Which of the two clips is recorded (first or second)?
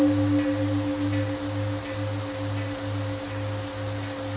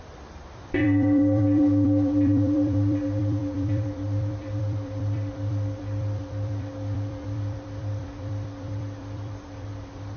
first